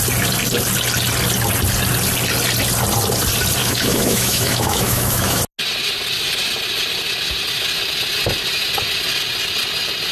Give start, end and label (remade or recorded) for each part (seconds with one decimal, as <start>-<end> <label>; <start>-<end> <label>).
0.0-3.6 recorded; 3.6-5.4 remade; 5.4-10.1 recorded